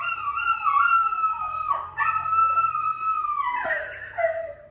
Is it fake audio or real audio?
real